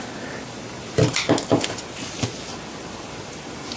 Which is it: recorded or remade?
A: recorded